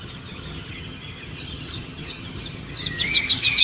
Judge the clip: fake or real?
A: fake